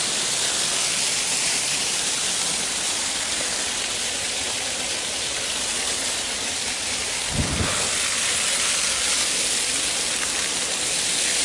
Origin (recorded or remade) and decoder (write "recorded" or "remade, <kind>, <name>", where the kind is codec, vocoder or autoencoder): recorded